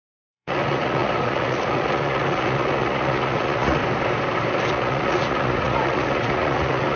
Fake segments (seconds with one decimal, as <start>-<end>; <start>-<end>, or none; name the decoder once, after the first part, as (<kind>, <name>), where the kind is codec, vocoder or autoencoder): 0.0-3.8 (vocoder, Vocos); 4.7-7.0